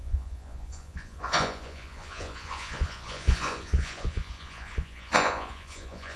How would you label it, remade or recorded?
remade